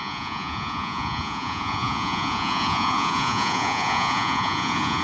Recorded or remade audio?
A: remade